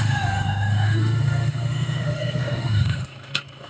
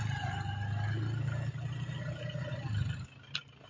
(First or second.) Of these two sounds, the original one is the second